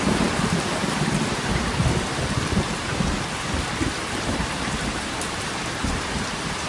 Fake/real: fake